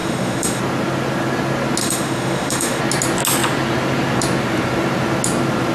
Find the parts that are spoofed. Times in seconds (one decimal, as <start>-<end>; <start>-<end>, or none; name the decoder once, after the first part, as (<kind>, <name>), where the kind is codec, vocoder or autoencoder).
0.0-0.6 (autoencoder, DAC-VAE); 1.8-2.8

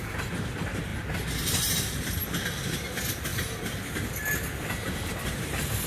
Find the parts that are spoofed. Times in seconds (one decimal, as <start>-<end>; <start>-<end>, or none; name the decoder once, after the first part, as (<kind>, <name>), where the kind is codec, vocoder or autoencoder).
none

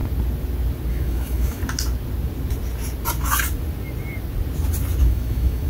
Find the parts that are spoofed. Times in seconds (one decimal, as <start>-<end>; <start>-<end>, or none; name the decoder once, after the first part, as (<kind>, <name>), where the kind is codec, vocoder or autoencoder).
0.9-1.6 (autoencoder, DAC-VAE); 5.0-5.7